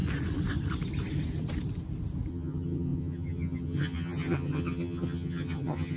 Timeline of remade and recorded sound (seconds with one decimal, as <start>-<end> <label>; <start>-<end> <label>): 0.0-2.3 recorded; 2.3-6.0 remade